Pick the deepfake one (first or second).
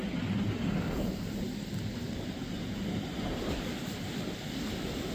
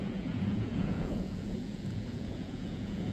second